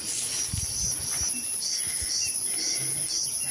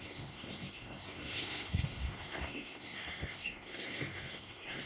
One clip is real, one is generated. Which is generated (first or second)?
second